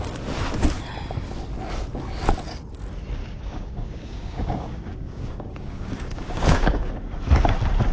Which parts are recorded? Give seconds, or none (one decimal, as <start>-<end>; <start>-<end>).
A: 0.0-3.2; 6.9-7.9